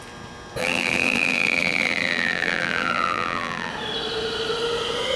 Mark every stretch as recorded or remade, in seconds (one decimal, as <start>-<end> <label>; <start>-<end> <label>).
0.0-0.6 recorded; 0.6-3.7 remade; 3.7-5.2 recorded